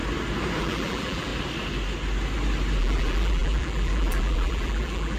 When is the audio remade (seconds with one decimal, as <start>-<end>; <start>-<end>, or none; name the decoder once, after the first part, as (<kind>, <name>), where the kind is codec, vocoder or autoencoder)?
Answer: 0.6-1.3 (vocoder, BigVGAN v2); 2.8-5.2